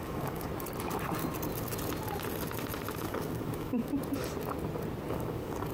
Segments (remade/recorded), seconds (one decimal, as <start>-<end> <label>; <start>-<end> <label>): 0.0-0.5 remade; 0.5-2.9 recorded; 2.9-3.9 remade; 3.9-5.1 recorded; 5.1-5.7 remade